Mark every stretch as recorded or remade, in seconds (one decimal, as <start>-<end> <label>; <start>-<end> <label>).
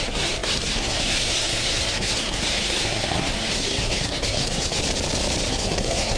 0.0-4.8 remade; 4.8-5.5 recorded; 5.5-6.2 remade